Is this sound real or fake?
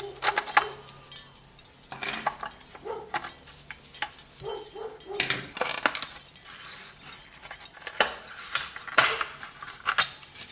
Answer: real